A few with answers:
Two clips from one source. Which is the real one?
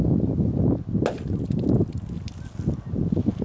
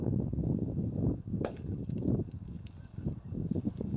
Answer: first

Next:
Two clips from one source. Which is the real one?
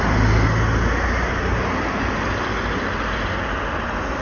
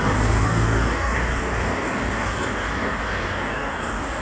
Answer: first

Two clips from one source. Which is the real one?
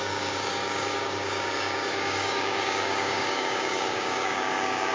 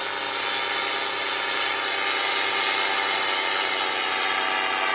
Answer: second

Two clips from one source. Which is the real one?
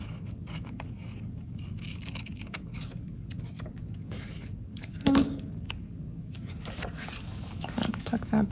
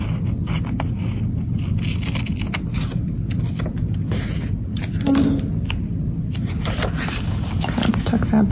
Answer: second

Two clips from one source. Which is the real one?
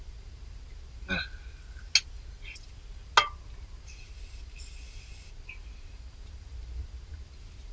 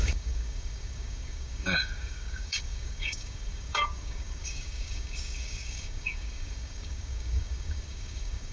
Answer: first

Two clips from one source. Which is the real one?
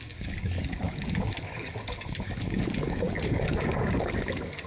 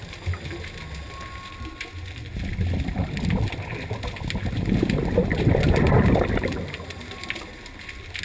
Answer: second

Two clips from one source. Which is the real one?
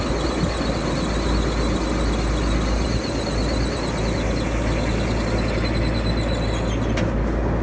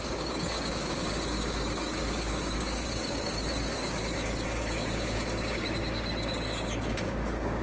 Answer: first